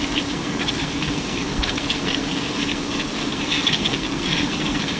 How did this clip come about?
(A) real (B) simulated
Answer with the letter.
B